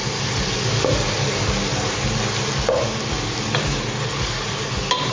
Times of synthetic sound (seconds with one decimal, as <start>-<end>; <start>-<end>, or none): none